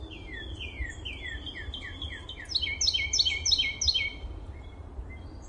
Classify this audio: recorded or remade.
recorded